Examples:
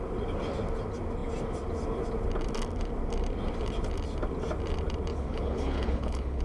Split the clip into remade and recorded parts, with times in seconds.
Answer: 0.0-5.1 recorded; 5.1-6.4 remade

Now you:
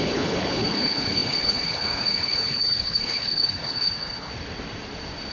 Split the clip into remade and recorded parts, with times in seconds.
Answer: 0.0-4.3 remade; 4.3-5.3 recorded

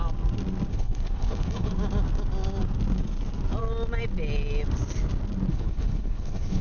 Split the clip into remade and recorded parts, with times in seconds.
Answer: 0.0-0.7 recorded; 0.7-1.7 remade; 1.7-5.5 recorded; 5.5-6.6 remade

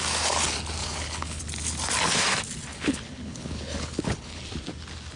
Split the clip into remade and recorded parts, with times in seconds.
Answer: 0.0-0.8 recorded; 0.8-1.4 remade; 1.4-2.7 recorded; 2.7-4.4 remade; 4.4-5.2 recorded

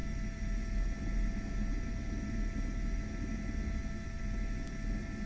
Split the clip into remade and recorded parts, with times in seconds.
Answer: 0.0-5.3 recorded

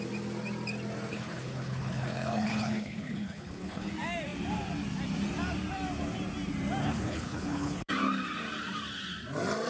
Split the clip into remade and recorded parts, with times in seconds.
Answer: 0.0-1.1 recorded; 1.1-3.9 remade; 3.9-6.8 recorded; 6.8-7.9 remade; 7.9-9.7 recorded

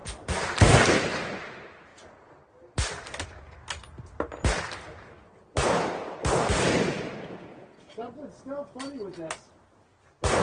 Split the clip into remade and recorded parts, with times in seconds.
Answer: 0.0-10.4 recorded

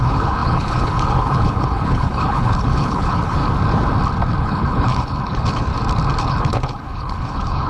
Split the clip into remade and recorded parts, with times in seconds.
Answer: 0.0-3.4 remade; 3.4-4.4 recorded; 4.4-5.7 remade; 5.7-6.2 recorded; 6.2-7.7 remade